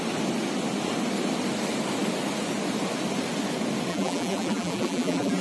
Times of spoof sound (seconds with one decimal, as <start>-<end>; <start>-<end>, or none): 3.9-5.4